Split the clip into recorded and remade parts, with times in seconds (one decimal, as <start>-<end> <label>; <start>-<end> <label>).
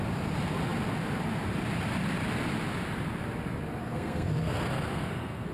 0.0-3.8 recorded; 3.8-5.5 remade